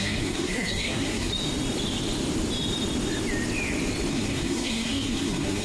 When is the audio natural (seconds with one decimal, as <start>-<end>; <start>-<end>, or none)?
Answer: 1.3-4.1